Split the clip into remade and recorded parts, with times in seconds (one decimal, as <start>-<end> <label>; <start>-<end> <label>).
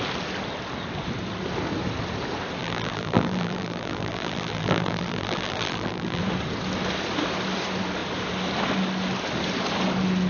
0.0-2.6 recorded; 2.6-6.2 remade; 6.2-10.3 recorded